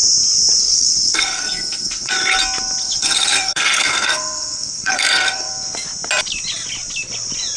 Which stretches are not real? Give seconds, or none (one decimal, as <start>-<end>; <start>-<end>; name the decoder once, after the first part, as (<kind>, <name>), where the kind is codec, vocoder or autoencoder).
0.6-2.1 (codec, SNAC); 2.8-5.5